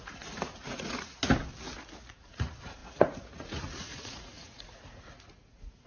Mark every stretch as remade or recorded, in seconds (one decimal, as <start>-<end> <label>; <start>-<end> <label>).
0.0-1.2 remade; 1.2-2.1 recorded; 2.1-5.9 remade